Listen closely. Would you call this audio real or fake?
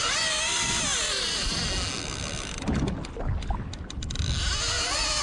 real